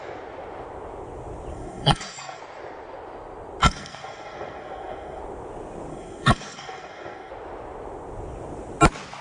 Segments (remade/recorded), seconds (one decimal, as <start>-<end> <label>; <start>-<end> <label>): 0.0-1.5 recorded; 1.5-2.4 remade; 2.4-3.6 recorded; 3.6-5.2 remade; 5.2-5.9 recorded; 5.9-7.3 remade; 7.3-9.2 recorded